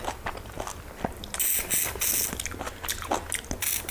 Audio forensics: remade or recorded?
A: recorded